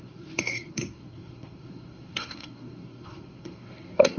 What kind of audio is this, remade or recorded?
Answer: remade